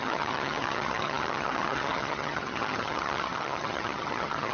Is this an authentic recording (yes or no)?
no